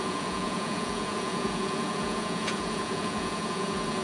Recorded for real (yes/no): no